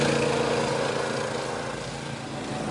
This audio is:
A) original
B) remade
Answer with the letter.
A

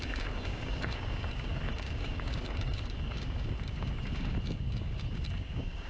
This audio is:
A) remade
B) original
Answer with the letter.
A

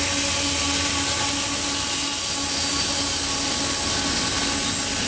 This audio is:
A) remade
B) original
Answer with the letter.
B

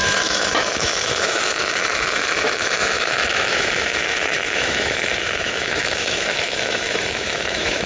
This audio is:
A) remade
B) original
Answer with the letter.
A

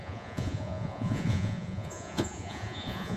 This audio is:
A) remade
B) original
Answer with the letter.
A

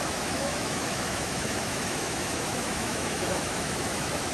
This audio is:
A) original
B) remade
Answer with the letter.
B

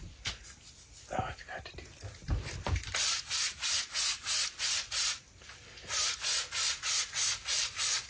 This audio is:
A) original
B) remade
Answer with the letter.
B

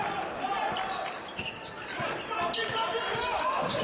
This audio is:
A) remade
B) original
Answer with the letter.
B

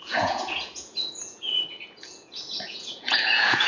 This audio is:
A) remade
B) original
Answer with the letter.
A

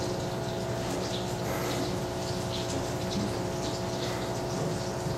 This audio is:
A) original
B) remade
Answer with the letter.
A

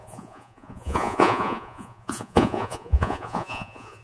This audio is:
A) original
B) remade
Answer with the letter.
B